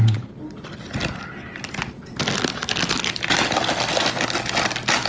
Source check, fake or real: real